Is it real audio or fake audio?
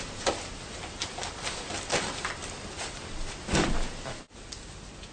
real